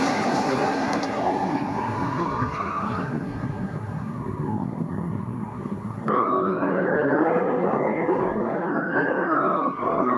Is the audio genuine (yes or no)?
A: no